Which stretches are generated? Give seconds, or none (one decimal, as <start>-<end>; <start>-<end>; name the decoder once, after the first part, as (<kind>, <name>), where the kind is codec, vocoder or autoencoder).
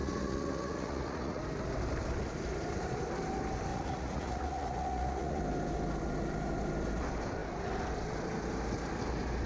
0.0-1.4 (vocoder, Vocos); 3.7-5.4